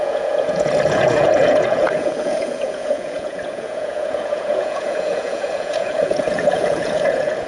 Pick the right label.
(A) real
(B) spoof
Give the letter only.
B